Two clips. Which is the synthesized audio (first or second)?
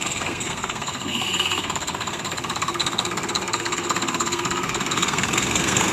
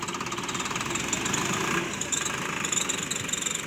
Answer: first